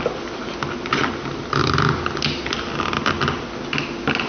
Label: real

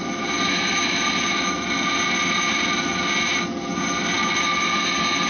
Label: real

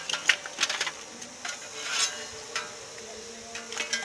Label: real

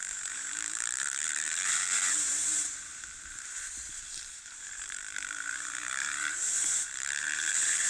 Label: fake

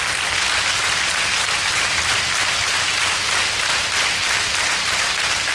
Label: real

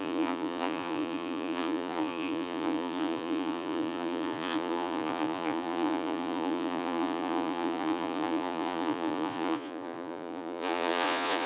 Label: fake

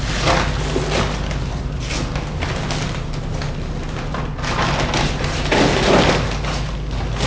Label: real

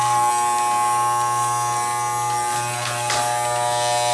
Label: real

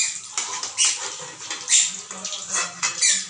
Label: real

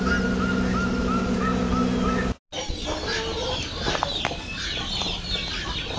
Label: real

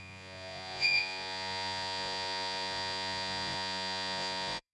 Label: fake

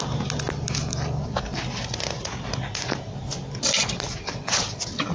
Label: real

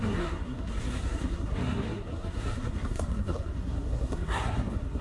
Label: fake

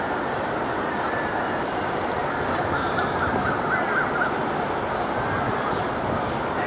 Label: real